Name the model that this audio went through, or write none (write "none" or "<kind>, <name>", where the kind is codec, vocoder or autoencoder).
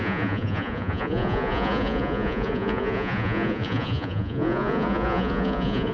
vocoder, Vocos